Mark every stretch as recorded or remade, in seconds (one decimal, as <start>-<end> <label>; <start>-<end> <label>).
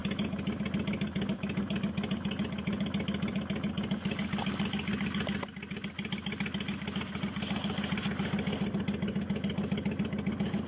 0.0-10.7 recorded